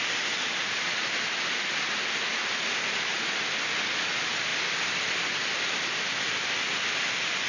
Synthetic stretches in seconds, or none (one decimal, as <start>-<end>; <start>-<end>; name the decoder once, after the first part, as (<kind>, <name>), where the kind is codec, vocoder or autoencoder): none